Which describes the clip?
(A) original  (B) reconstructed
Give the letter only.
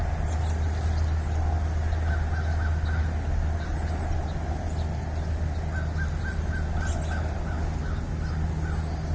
A